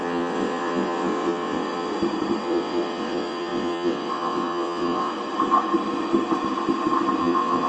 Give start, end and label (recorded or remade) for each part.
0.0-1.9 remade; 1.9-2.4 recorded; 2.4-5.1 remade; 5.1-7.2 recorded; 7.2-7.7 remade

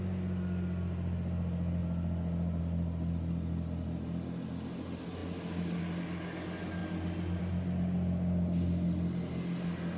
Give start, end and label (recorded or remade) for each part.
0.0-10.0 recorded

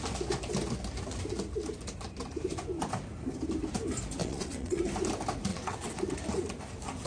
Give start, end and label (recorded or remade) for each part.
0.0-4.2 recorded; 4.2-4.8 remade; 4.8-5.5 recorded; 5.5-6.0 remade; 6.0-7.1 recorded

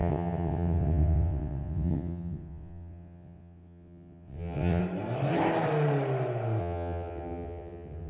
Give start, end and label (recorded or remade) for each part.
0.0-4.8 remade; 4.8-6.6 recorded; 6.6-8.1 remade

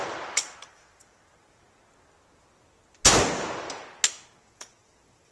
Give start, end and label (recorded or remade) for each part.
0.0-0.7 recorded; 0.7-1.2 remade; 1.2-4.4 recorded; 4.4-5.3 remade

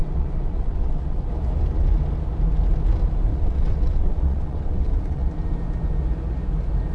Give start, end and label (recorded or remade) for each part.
0.0-1.3 remade; 1.3-3.3 recorded; 3.3-5.3 remade; 5.3-6.9 recorded